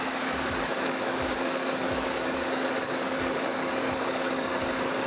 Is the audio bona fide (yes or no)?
no